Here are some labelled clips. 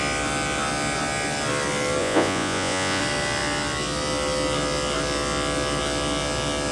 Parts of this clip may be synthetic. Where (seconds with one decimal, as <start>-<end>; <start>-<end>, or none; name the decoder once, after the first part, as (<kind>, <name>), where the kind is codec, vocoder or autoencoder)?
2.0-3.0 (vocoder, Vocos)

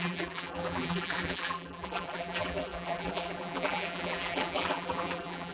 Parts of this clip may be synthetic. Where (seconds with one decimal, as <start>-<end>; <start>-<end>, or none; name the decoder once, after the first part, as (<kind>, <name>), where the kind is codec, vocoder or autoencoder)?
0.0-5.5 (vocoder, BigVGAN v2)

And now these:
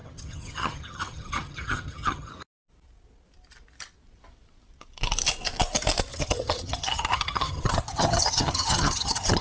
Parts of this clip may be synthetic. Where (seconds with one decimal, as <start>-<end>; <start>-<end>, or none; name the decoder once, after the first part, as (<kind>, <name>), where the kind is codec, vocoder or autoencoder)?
0.0-2.3 (vocoder, HiFi-GAN); 6.1-9.4

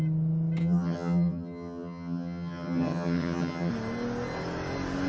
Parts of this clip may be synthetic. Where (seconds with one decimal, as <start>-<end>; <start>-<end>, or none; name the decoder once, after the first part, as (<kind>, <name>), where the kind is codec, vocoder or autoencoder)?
0.6-3.7 (vocoder, HiFi-GAN)